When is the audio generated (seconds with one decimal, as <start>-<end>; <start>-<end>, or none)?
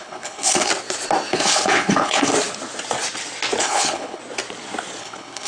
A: 0.0-0.7; 1.3-2.3; 3.6-4.2; 5.0-5.5